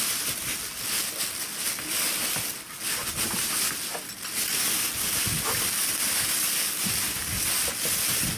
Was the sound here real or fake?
real